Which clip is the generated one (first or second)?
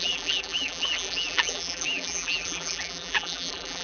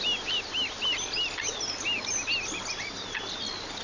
first